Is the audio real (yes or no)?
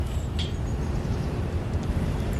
no